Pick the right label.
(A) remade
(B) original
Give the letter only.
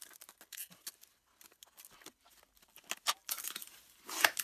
B